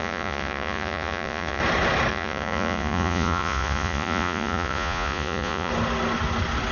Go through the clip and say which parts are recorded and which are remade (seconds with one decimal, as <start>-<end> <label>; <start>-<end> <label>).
0.0-1.6 remade; 1.6-2.1 recorded; 2.1-5.7 remade; 5.7-6.7 recorded